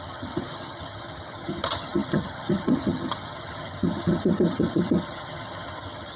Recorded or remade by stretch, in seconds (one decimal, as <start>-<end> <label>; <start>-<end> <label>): 0.0-6.2 remade